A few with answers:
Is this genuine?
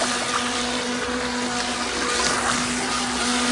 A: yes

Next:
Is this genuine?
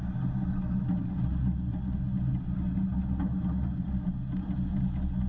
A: yes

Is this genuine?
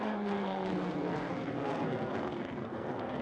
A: no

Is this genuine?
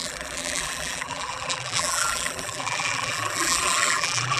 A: no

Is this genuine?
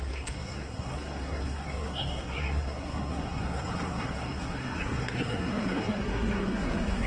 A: no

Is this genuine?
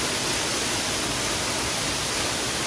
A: yes